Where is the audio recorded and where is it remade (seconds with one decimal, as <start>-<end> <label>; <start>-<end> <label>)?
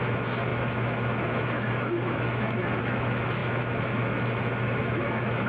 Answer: 0.0-5.5 remade